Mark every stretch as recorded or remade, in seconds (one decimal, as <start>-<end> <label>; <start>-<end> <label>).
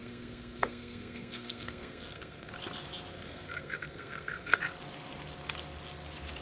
0.0-2.5 remade; 2.5-3.1 recorded; 3.1-4.6 remade; 4.6-6.4 recorded